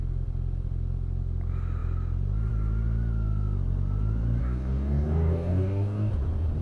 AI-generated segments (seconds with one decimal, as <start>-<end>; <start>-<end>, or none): 4.4-6.1